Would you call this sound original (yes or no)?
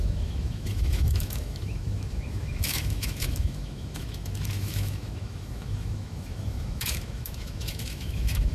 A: no